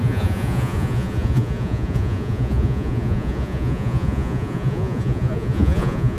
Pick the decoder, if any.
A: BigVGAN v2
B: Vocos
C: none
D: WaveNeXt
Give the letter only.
B